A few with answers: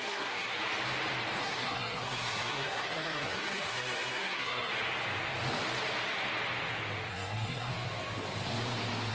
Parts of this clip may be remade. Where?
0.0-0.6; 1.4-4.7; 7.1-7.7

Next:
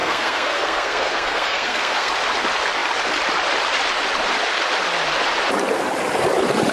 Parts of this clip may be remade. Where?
0.0-2.1

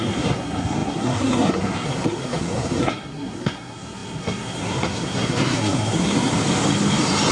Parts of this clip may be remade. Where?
0.0-6.3